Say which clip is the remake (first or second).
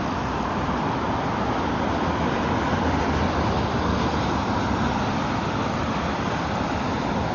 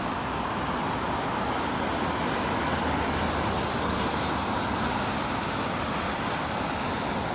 first